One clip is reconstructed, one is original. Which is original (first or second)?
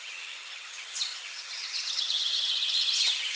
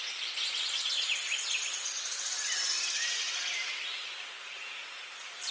second